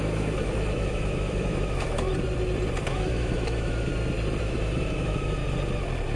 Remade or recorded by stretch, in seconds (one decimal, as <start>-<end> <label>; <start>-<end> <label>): 0.0-2.1 remade; 2.1-2.8 recorded; 2.8-3.9 remade; 3.9-4.4 recorded; 4.4-5.4 remade; 5.4-6.2 recorded